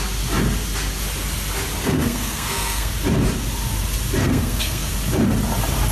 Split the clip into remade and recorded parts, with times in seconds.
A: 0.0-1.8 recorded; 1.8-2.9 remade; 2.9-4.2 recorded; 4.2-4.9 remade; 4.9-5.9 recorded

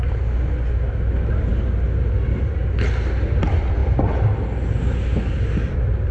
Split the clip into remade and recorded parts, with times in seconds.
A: 0.0-6.1 recorded

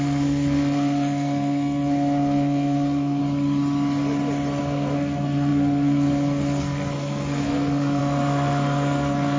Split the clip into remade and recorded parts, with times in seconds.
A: 0.0-3.2 remade; 3.2-4.6 recorded; 4.6-9.4 remade

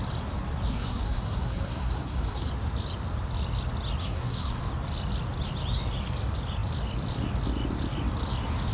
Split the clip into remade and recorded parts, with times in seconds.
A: 0.0-0.7 recorded; 0.7-2.5 remade; 2.5-4.0 recorded; 4.0-4.6 remade; 4.6-8.7 recorded

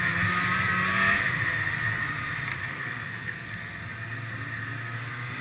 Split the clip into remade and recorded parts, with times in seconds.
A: 0.0-2.5 recorded; 2.5-3.8 remade; 3.8-5.4 recorded